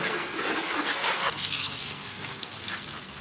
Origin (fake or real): fake